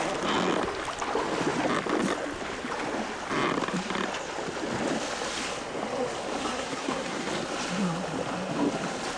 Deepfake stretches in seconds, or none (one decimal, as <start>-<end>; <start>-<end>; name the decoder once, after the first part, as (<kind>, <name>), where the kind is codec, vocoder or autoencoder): 6.4-7.3 (codec, SNAC)